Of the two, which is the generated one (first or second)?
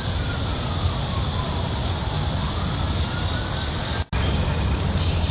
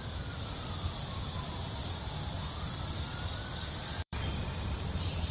second